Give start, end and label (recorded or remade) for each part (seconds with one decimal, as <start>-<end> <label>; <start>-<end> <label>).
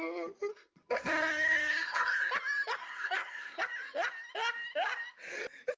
0.0-0.5 recorded; 0.5-2.3 remade; 2.3-2.8 recorded; 2.8-3.6 remade; 3.6-5.8 recorded